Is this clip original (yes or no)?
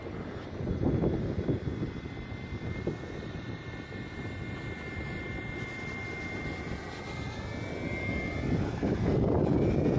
yes